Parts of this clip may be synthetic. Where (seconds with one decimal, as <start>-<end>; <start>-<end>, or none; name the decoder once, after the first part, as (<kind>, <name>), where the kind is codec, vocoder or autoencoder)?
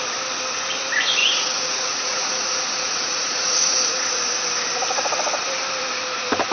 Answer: 1.2-4.2 (vocoder, Vocos)